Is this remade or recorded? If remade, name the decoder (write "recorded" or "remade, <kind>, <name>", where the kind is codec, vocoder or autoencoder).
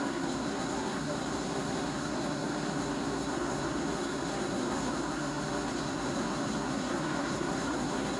remade, codec, SNAC